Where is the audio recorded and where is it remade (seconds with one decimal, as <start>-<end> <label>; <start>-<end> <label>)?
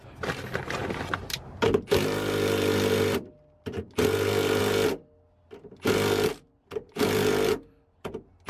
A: 0.0-8.5 recorded